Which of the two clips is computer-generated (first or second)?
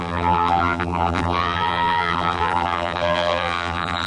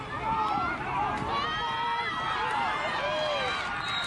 first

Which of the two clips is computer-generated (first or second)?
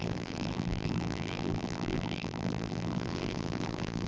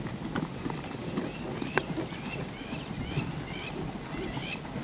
first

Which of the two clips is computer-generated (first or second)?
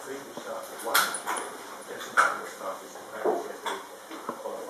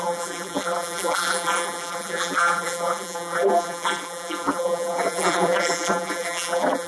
second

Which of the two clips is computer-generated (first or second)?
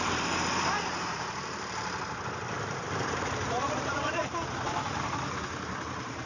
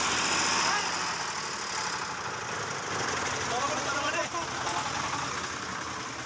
first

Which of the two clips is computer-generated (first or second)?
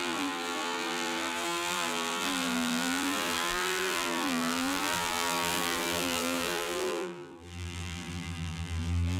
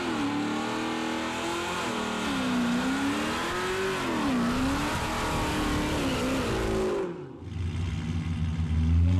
first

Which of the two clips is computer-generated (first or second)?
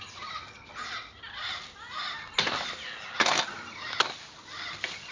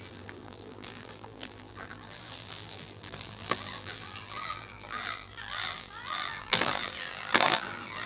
second